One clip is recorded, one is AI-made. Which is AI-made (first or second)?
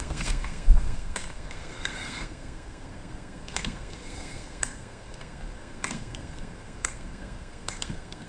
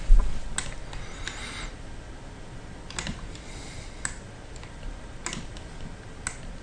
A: first